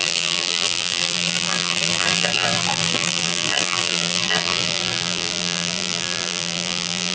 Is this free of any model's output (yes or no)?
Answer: no